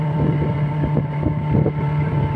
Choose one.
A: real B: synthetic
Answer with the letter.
B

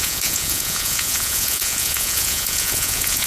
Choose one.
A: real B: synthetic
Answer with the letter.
B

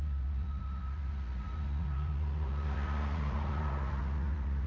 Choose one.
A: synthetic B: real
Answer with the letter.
A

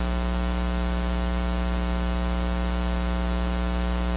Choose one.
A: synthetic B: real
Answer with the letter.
B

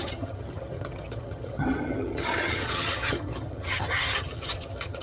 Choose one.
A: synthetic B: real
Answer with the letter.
A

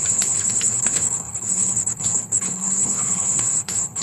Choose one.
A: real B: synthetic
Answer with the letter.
B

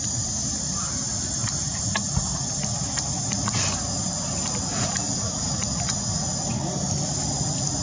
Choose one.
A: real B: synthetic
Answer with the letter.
A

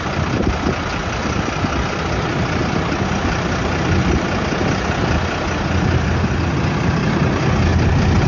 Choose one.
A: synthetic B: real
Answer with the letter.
B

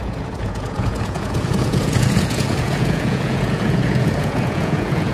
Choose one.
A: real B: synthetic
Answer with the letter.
B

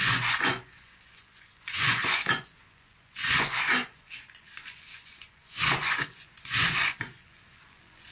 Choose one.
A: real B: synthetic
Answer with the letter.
B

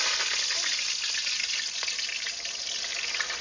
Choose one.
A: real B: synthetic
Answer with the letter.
A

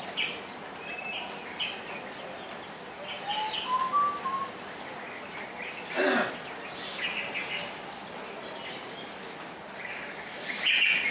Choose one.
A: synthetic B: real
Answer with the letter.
B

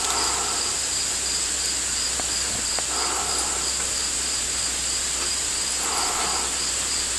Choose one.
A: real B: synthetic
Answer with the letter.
A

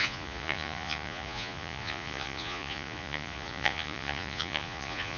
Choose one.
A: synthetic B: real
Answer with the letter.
A